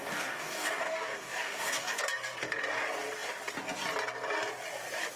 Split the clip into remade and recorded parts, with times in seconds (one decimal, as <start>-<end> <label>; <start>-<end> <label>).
0.0-2.0 remade; 2.0-5.2 recorded